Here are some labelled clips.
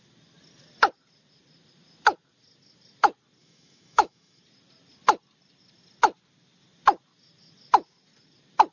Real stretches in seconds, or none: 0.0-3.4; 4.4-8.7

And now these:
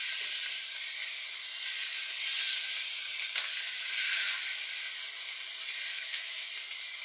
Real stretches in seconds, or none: 0.0-5.9; 6.5-7.0